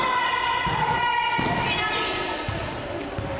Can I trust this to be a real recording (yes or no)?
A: yes